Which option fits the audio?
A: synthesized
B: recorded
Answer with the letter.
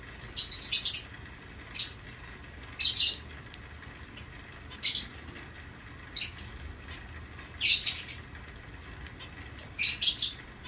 B